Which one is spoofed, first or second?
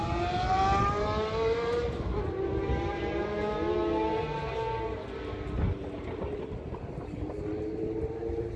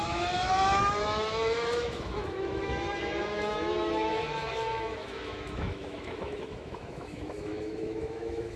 second